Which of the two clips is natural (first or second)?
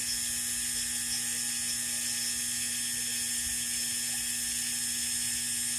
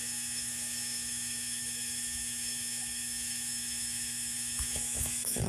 first